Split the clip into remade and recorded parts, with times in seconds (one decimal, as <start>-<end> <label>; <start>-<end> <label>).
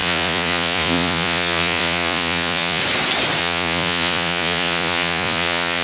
0.0-2.8 remade; 2.8-3.4 recorded; 3.4-5.8 remade